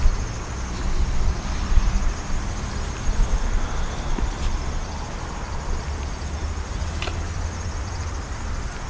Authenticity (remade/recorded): recorded